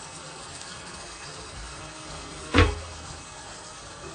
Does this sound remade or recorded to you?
remade